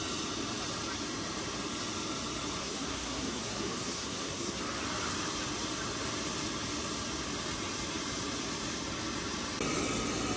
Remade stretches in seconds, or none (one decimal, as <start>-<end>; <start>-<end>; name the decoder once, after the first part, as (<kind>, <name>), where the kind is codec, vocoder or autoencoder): 2.6-4.6 (codec, SNAC)